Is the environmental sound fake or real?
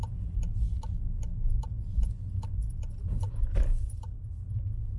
real